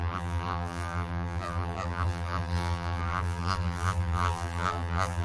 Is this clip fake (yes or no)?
yes